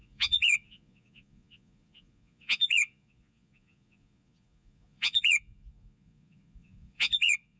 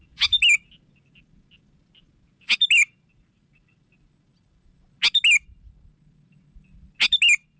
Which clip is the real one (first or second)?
second